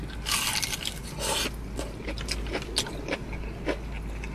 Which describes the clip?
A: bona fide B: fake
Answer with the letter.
A